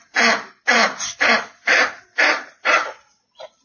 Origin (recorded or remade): recorded